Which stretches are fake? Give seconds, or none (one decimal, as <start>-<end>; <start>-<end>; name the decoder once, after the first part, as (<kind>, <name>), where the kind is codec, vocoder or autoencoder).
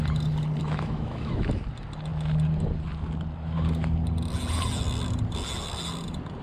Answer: 0.6-1.6 (autoencoder, DAC-VAE)